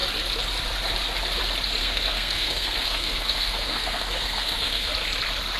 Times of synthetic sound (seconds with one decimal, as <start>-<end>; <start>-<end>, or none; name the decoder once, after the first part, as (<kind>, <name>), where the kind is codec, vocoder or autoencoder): 1.8-4.9 (codec, SNAC)